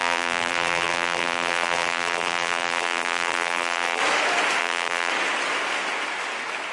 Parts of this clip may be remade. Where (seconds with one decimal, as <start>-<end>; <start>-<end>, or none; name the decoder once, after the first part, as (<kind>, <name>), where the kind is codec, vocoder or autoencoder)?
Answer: 0.0-4.0 (vocoder, BigVGAN v2); 4.6-5.1